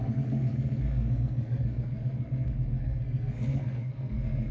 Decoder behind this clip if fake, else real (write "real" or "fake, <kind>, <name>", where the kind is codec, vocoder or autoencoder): fake, codec, SNAC